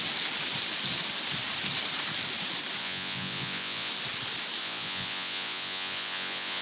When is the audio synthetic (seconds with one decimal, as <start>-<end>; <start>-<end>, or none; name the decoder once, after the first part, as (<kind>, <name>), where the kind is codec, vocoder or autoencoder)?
2.8-3.9 (vocoder, Vocos); 4.6-6.6